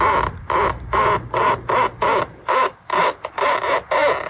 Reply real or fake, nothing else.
real